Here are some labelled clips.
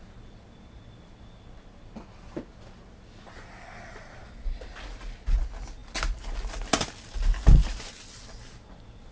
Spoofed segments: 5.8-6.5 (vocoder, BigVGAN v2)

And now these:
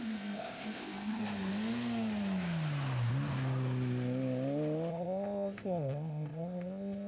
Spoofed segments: 0.0-1.2 (codec, ZipCodec); 4.9-7.1